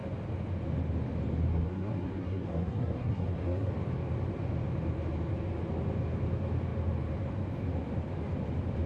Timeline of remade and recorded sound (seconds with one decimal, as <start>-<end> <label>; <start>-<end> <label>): 0.0-1.5 recorded; 1.5-3.7 remade; 3.7-8.9 recorded